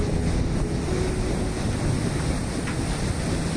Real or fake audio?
real